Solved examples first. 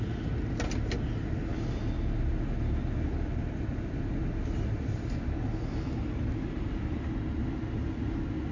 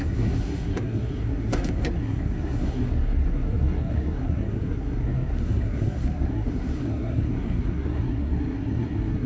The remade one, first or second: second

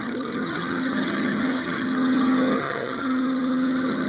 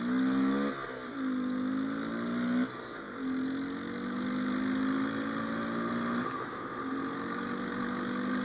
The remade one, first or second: first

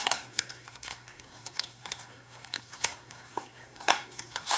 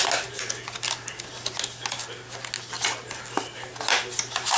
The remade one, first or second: first